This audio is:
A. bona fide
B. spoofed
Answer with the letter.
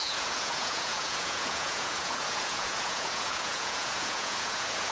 B